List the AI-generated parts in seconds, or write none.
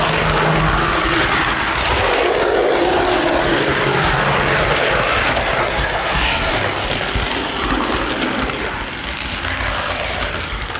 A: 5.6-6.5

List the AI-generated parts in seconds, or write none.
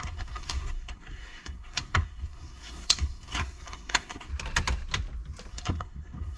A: 0.0-4.3; 5.5-6.4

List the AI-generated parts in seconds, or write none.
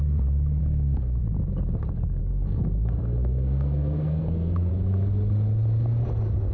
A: 0.6-1.2; 2.2-4.7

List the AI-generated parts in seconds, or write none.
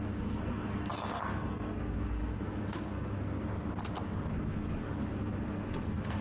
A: 0.0-3.5; 4.3-6.2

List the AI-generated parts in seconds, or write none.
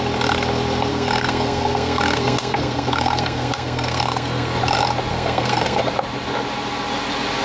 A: 0.9-4.6; 5.1-5.8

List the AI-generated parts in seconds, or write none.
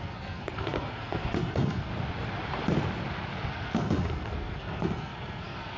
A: 0.0-1.9; 3.5-5.8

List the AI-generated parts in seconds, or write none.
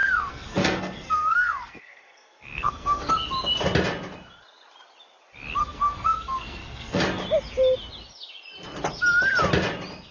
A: 0.0-3.1; 5.6-7.0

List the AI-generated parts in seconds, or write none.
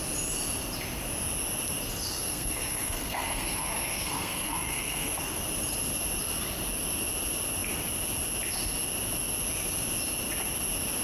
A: 2.0-5.4